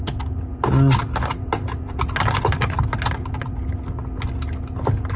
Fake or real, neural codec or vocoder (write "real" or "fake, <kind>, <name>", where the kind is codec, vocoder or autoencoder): real